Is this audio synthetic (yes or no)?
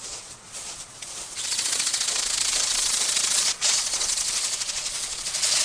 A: yes